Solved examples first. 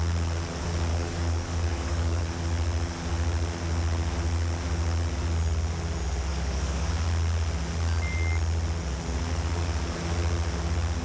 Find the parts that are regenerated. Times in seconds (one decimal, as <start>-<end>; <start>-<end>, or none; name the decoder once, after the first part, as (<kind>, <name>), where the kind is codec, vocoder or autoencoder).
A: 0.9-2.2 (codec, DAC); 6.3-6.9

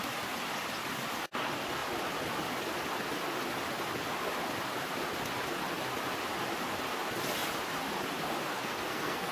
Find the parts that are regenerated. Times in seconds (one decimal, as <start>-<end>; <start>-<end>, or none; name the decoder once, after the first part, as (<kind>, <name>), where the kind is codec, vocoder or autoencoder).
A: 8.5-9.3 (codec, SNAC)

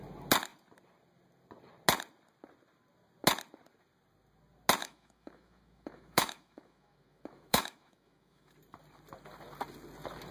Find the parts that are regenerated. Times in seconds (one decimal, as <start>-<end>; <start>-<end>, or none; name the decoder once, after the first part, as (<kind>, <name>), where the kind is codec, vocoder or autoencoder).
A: 4.8-8.5 (autoencoder, DAC-VAE)

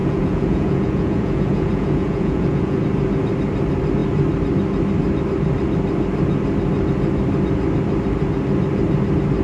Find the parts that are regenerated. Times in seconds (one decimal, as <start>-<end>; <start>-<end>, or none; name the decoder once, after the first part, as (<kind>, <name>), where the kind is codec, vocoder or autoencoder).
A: 0.0-2.8 (vocoder, Vocos)

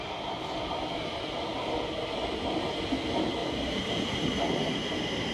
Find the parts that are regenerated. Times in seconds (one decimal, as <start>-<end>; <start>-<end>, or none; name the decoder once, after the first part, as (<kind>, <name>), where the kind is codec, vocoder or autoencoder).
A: none

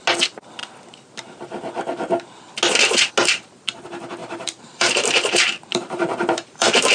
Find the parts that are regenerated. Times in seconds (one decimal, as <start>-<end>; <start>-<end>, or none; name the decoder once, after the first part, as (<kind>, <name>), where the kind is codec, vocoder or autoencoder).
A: 4.2-6.9 (vocoder, BigVGAN v2)

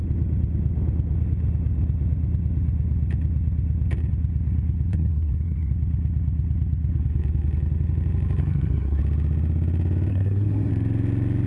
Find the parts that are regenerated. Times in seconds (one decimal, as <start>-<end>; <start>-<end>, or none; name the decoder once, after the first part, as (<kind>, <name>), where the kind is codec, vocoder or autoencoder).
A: 4.9-5.7 (codec, SNAC); 8.4-9.0; 10.1-10.7

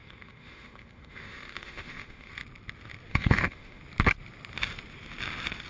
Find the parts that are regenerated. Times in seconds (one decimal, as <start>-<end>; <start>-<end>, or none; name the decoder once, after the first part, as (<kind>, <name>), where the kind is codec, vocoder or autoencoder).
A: 0.0-2.3 (autoencoder, DAC-VAE); 3.1-3.8